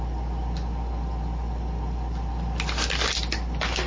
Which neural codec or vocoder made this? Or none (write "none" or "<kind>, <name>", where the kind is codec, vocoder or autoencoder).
none